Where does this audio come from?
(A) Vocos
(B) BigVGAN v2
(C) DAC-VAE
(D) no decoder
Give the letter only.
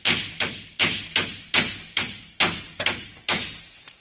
D